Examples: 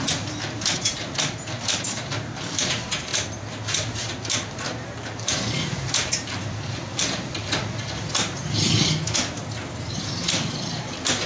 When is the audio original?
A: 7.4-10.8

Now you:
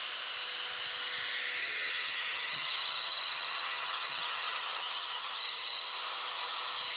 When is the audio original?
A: 0.0-1.6; 5.8-7.0

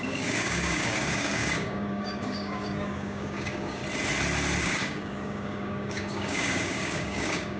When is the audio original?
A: 3.8-4.6

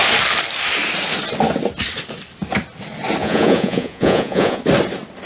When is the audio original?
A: 0.0-3.2; 4.6-5.3